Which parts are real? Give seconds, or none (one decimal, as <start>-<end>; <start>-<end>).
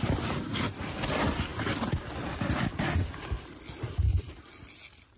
0.0-5.2